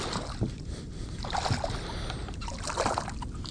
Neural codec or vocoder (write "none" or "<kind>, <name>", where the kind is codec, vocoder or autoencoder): none